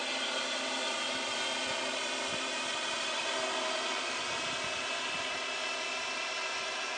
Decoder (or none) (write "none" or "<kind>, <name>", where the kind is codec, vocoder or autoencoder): none